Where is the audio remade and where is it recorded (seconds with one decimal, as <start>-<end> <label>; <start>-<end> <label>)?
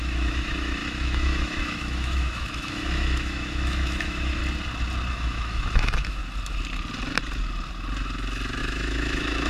0.0-4.4 remade; 4.4-5.1 recorded; 5.1-6.2 remade; 6.2-8.6 recorded; 8.6-9.5 remade